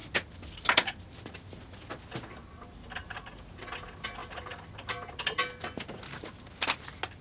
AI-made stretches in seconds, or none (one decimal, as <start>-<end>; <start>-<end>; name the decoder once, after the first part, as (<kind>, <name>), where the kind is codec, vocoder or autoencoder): none